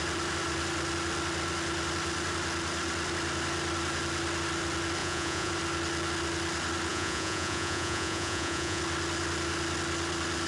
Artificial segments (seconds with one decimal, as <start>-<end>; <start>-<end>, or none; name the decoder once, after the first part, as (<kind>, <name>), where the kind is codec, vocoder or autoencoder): 5.0-5.5 (vocoder, Vocos); 6.9-8.8